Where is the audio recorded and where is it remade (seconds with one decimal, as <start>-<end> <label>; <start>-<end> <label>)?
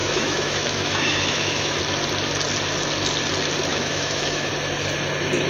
0.0-1.8 remade; 1.8-3.7 recorded; 3.7-4.5 remade; 4.5-5.5 recorded